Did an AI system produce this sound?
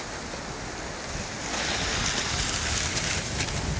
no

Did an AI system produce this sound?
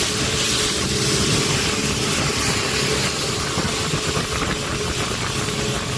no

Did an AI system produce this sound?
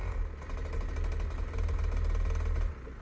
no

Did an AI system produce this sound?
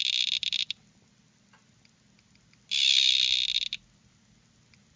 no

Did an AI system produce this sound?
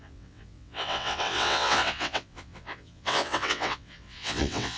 yes